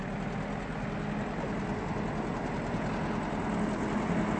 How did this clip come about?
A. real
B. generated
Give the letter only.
A